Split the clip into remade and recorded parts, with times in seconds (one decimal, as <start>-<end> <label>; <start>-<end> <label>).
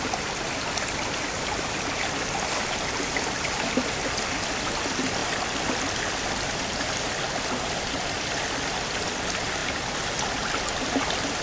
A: 0.0-11.4 recorded